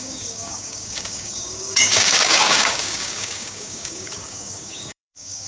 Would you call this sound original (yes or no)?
no